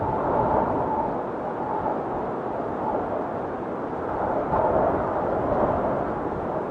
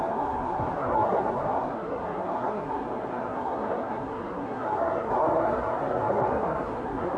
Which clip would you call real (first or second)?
first